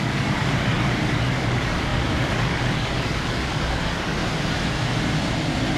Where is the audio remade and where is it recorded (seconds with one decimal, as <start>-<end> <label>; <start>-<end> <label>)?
0.0-4.2 remade; 4.2-5.8 recorded